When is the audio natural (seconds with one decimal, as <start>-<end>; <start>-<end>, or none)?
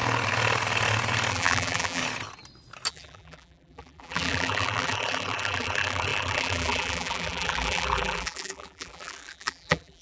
0.0-1.3; 2.0-2.9